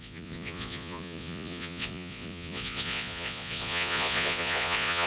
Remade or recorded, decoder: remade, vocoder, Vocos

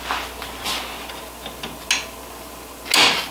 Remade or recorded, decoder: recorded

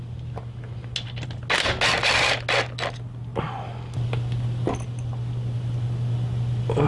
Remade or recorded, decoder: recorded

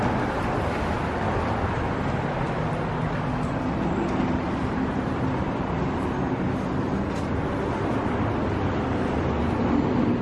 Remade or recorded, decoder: recorded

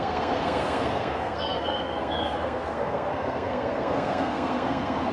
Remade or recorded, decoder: remade, codec, SNAC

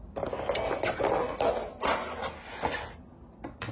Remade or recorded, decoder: recorded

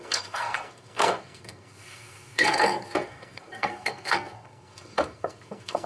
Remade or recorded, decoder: remade, codec, SNAC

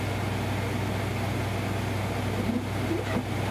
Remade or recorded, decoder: recorded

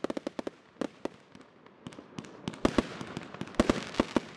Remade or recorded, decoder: recorded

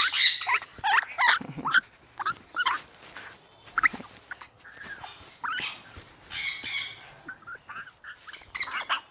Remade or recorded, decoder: recorded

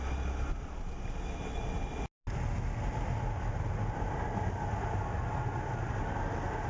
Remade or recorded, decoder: recorded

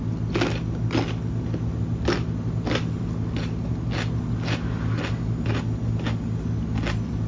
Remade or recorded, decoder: recorded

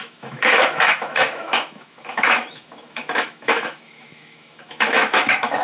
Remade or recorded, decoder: remade, autoencoder, DAC-VAE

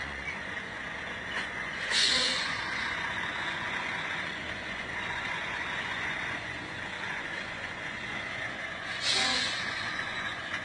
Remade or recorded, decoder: remade, vocoder, Vocos